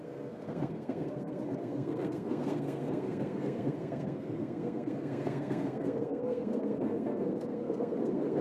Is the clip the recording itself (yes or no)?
no